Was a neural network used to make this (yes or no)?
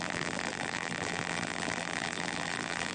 yes